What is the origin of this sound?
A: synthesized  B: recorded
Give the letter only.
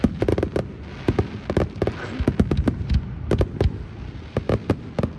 B